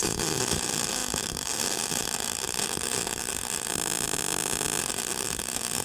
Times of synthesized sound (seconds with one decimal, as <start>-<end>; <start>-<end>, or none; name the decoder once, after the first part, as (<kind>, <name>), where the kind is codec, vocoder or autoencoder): 0.0-3.7 (autoencoder, DAC-VAE); 4.8-5.8